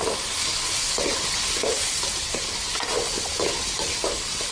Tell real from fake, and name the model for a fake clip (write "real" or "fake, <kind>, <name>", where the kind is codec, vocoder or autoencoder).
real